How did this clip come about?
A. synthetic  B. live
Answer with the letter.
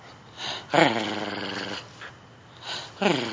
B